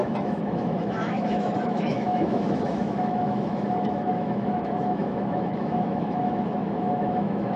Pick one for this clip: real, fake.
fake